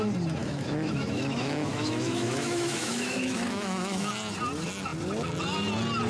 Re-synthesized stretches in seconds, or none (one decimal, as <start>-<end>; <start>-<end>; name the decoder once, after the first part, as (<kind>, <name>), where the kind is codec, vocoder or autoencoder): 0.4-4.1 (autoencoder, DAC-VAE)